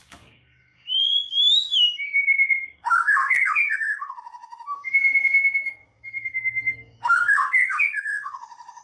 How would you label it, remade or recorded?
remade